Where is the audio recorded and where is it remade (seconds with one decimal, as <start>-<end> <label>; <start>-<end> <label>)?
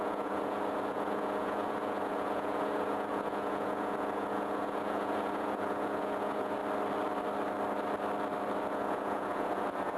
0.0-6.6 remade; 6.6-8.6 recorded; 8.6-10.0 remade